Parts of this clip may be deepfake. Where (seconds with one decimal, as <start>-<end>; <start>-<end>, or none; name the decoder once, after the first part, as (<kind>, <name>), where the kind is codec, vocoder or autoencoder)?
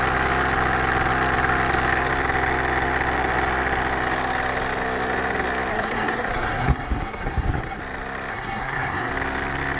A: 5.7-7.8 (codec, SNAC); 8.3-9.1